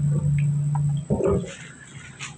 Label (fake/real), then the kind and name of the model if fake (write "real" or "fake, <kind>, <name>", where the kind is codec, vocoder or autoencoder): real